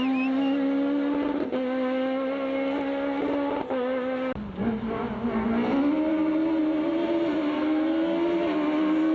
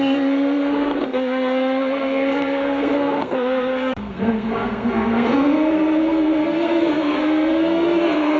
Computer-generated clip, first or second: second